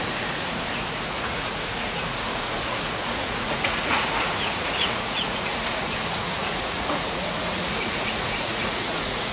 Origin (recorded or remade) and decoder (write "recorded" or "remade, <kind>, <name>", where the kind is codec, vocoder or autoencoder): remade, vocoder, Vocos